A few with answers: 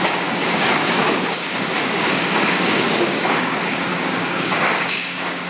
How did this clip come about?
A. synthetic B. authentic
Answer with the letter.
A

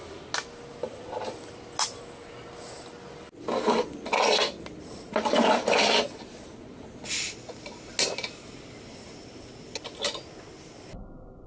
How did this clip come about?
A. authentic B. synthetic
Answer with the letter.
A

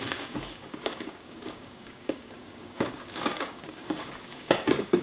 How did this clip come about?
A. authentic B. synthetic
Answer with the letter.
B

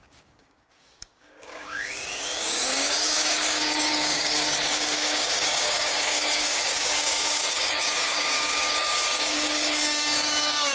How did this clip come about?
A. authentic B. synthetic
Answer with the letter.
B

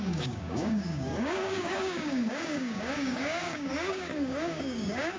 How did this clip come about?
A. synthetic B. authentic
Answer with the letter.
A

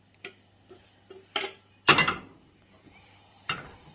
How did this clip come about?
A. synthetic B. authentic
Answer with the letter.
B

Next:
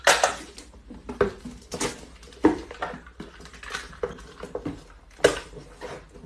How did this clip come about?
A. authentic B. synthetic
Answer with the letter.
A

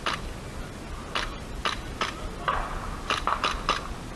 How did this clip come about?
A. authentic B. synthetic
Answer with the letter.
A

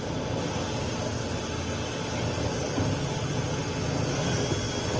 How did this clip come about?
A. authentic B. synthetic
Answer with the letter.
A